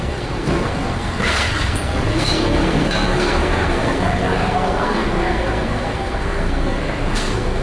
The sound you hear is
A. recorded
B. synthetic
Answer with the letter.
B